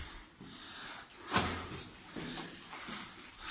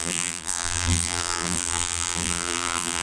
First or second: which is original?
first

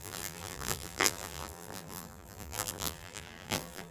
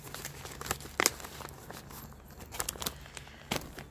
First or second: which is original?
second